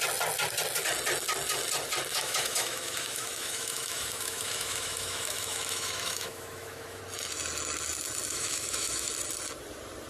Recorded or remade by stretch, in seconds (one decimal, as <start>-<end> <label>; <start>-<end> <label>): 0.0-2.1 recorded; 2.1-7.0 remade; 7.0-8.3 recorded; 8.3-9.1 remade; 9.1-10.1 recorded